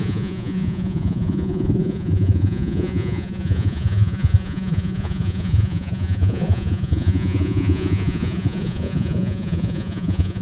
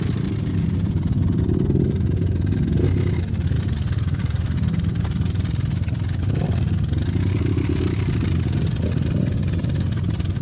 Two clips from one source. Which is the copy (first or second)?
first